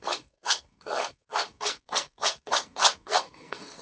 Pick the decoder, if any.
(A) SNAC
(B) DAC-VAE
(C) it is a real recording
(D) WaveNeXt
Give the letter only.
A